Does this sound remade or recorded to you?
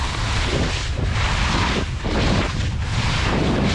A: recorded